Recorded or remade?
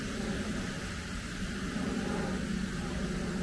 recorded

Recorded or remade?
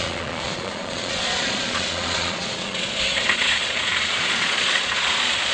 remade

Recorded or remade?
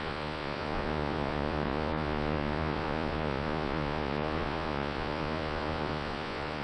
remade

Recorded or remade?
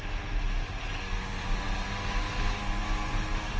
recorded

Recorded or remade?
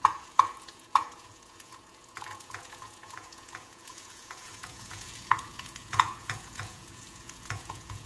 remade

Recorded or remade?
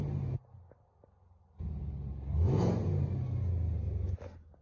recorded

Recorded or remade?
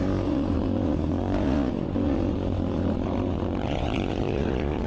remade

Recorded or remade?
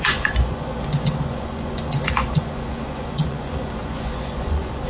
remade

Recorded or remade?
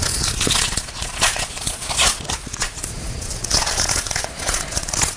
remade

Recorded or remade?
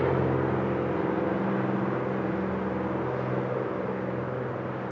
recorded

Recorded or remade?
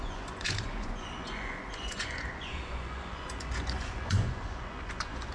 remade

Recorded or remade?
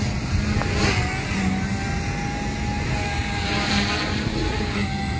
recorded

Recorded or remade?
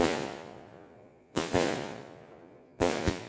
remade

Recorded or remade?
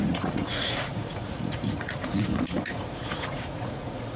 remade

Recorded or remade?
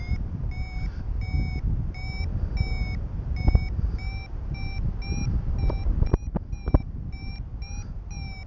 recorded